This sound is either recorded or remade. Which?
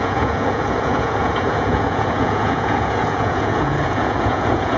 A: remade